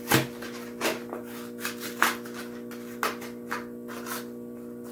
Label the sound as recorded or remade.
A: recorded